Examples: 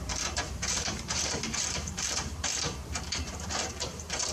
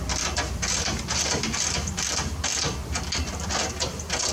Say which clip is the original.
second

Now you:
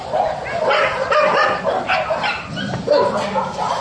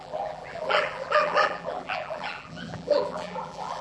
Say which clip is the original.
first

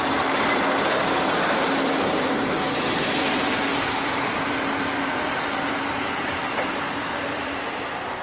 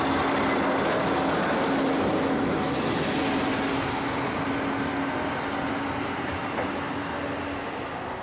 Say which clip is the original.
second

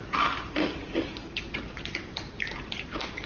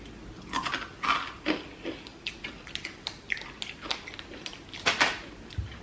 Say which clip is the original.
second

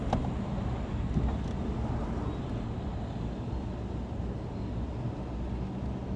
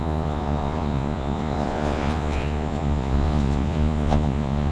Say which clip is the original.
first